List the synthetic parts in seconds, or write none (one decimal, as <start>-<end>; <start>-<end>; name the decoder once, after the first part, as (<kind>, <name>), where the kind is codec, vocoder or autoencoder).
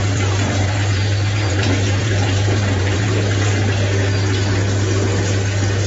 0.0-3.5 (vocoder, BigVGAN v2)